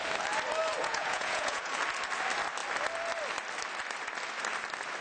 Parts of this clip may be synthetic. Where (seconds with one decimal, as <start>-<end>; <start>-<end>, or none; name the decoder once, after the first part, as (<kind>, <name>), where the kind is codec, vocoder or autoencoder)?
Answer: 0.8-1.7 (vocoder, Vocos)